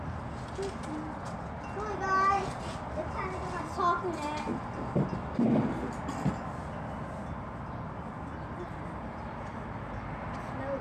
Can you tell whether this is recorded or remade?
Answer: recorded